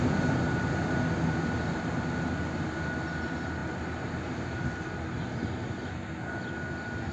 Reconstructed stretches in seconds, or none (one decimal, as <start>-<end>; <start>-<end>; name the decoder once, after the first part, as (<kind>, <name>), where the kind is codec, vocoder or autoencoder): 5.9-6.4 (codec, SNAC)